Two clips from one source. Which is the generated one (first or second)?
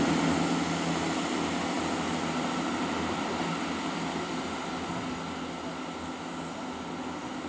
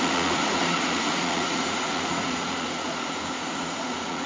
second